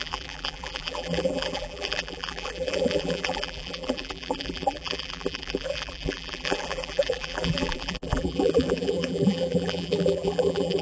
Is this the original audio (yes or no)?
no